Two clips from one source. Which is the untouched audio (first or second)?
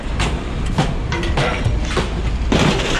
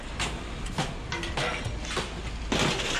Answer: second